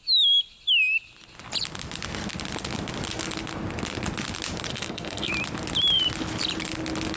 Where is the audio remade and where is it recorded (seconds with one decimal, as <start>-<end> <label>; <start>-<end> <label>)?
0.0-4.7 recorded; 4.7-5.3 remade; 5.3-7.2 recorded